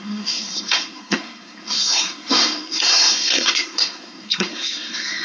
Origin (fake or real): fake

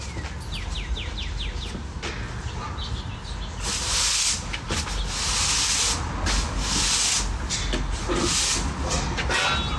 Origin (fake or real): real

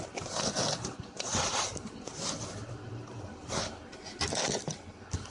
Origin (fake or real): real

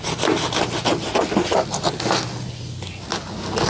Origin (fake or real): real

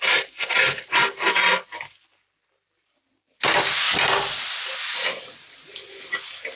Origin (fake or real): real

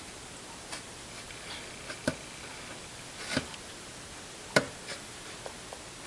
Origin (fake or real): real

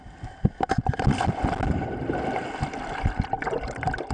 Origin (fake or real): real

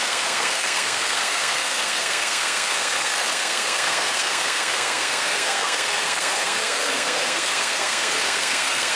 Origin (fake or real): fake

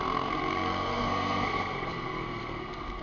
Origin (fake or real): fake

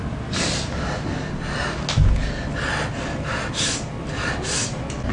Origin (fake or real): real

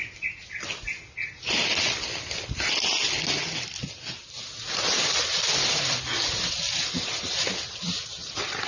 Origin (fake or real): real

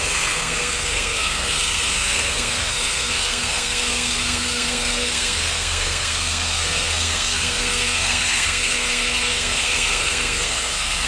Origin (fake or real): fake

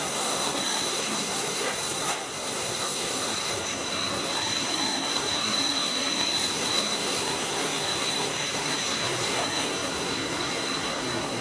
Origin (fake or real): fake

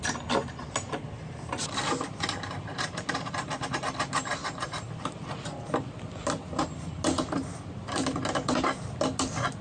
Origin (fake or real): real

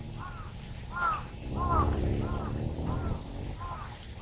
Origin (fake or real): real